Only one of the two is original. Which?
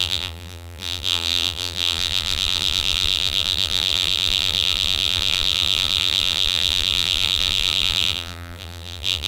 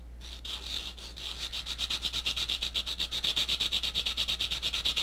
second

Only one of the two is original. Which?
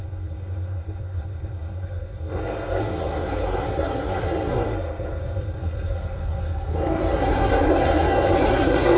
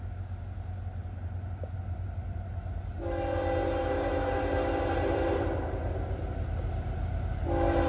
second